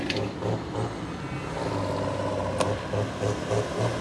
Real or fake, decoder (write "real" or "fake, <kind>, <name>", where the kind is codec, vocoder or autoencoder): real